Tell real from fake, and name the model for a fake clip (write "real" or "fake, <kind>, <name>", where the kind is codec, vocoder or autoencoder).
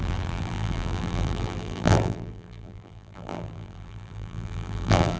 fake, vocoder, BigVGAN v2